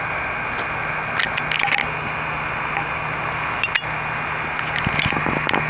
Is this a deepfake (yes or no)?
no